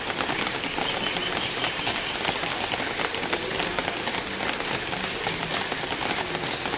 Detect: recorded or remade recorded